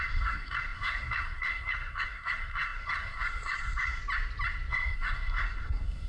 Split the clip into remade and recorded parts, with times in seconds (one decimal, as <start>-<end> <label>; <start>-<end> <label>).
0.0-4.0 remade; 4.0-4.7 recorded; 4.7-6.1 remade